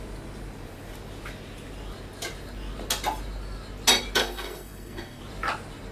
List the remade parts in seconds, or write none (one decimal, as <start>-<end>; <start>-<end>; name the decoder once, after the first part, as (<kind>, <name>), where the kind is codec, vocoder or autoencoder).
4.2-5.2 (codec, SNAC)